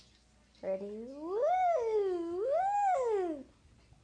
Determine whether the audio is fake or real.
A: real